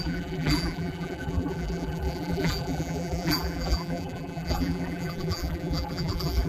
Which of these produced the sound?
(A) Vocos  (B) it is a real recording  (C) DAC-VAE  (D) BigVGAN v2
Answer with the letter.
D